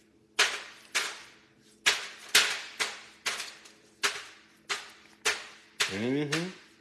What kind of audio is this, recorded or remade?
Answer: recorded